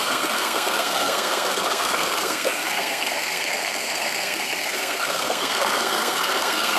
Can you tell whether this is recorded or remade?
remade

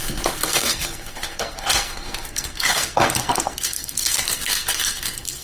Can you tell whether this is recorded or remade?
remade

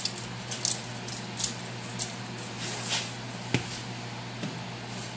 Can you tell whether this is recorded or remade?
recorded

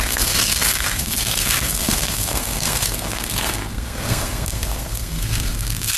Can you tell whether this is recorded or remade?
remade